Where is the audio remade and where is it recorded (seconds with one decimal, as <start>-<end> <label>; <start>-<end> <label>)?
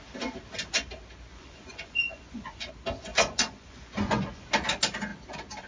0.0-1.3 recorded; 1.3-2.7 remade; 2.7-3.1 recorded; 3.1-4.5 remade; 4.5-5.7 recorded